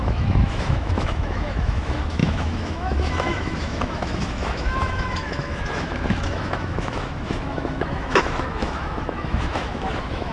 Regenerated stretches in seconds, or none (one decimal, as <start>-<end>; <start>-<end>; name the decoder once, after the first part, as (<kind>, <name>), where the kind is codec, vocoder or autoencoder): 0.0-10.3 (autoencoder, DAC-VAE)